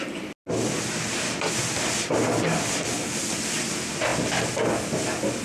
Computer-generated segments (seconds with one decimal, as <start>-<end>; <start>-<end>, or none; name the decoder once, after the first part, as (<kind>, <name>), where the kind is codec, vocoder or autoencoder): none